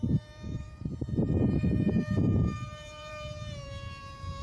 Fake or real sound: fake